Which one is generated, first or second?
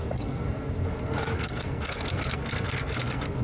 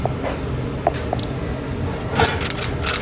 first